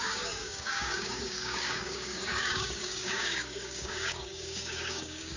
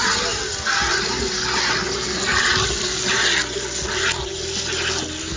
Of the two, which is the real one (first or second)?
second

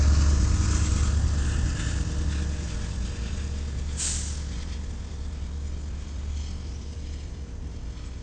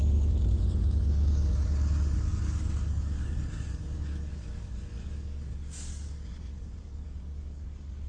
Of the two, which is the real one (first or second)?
first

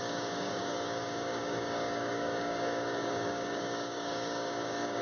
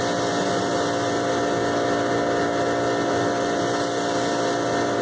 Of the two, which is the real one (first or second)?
second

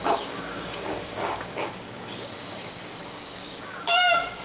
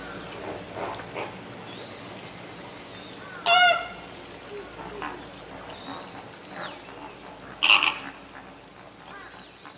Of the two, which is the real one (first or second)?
second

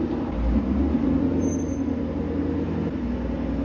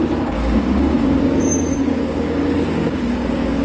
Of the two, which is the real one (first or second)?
first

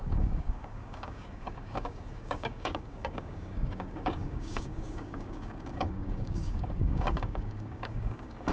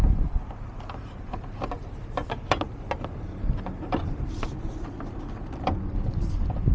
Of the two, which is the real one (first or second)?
second